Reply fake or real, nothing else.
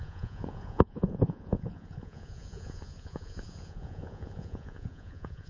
fake